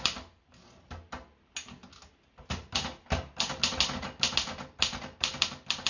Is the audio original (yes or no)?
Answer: yes